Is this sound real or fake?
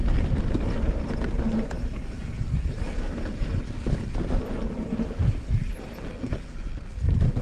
real